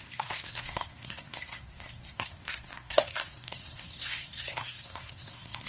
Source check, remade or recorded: remade